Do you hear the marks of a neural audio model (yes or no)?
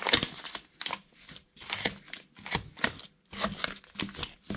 no